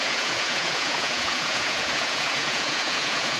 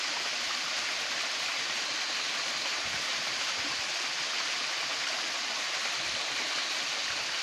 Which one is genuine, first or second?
second